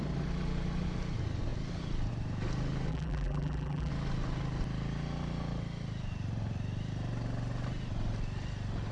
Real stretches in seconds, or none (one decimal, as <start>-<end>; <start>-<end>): 0.0-2.9; 3.9-8.9